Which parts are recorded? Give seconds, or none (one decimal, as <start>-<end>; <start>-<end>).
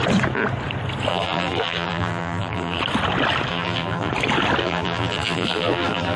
0.0-1.1; 2.8-3.5; 4.1-4.6